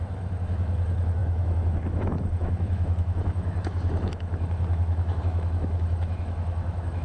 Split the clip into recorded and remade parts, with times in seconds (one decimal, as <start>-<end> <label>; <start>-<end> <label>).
0.0-7.0 remade